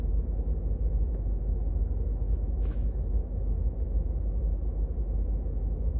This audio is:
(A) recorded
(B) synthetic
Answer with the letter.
B